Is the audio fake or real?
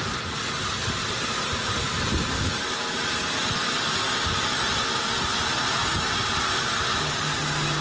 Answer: real